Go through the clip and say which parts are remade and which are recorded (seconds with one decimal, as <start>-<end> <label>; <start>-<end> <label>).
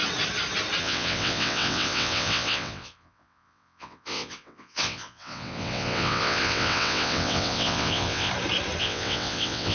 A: 0.0-0.8 recorded; 0.8-8.3 remade; 8.3-8.8 recorded; 8.8-9.7 remade